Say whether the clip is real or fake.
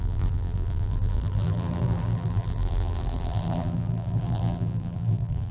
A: fake